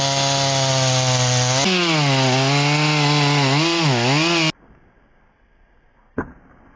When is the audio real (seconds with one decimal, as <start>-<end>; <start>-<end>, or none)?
0.0-6.8